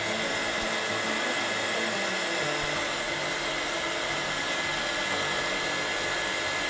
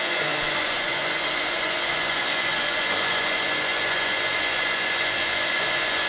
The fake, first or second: second